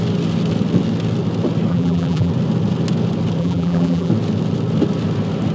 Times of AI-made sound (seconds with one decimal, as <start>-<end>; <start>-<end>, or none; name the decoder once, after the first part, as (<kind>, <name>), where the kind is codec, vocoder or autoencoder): 1.7-2.3 (vocoder, BigVGAN v2); 3.4-4.1